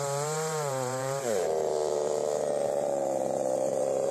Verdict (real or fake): fake